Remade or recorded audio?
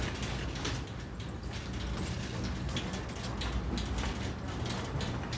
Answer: recorded